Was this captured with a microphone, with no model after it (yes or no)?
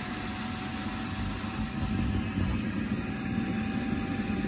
yes